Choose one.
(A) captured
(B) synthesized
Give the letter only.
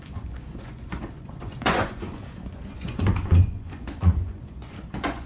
B